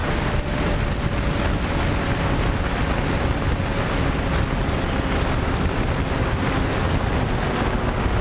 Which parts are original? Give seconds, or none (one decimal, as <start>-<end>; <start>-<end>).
0.0-8.2